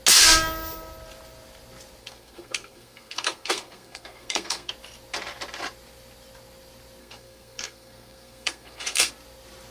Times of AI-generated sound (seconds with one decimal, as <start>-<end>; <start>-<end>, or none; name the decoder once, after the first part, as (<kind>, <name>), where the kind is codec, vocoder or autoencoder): 2.0-4.7 (codec, SNAC); 7.0-9.1